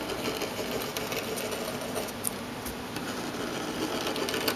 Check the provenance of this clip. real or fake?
real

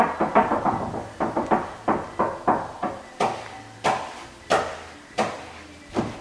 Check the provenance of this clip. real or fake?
real